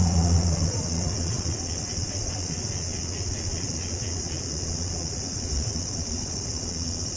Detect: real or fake fake